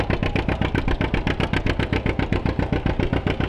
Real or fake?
real